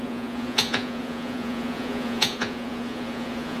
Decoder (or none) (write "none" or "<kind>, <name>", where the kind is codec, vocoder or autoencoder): vocoder, Vocos